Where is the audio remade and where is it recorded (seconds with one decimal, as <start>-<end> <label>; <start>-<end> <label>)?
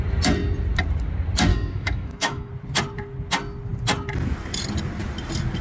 0.0-1.5 recorded; 1.5-2.5 remade; 2.5-5.6 recorded